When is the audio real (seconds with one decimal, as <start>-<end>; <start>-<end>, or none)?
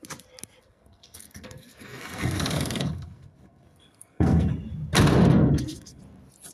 0.0-0.6; 4.5-5.3; 6.0-6.5